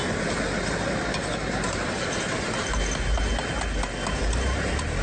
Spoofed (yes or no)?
no